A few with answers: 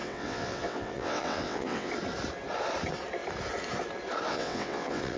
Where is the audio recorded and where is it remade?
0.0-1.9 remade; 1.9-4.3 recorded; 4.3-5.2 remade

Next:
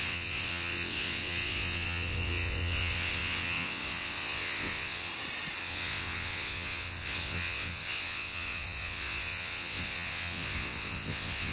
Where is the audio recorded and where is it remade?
0.0-5.1 remade; 5.1-5.6 recorded; 5.6-11.5 remade

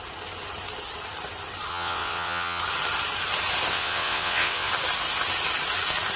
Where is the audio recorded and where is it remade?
0.0-1.7 recorded; 1.7-2.6 remade; 2.6-3.7 recorded; 3.7-4.7 remade; 4.7-6.2 recorded

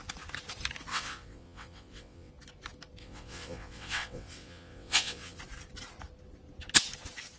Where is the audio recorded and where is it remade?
0.0-0.9 recorded; 0.9-2.3 remade; 2.3-3.0 recorded; 3.0-5.4 remade; 5.4-7.4 recorded

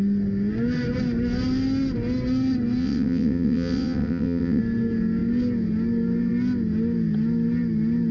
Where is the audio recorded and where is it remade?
0.0-2.8 recorded; 2.8-4.6 remade; 4.6-8.1 recorded

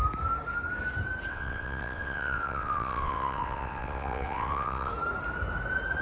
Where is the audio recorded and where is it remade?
0.0-1.3 recorded; 1.3-4.9 remade; 4.9-6.0 recorded